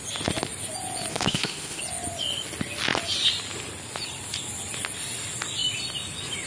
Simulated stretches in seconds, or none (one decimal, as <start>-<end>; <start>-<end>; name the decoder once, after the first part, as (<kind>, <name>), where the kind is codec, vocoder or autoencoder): 1.1-1.8 (autoencoder, DAC-VAE)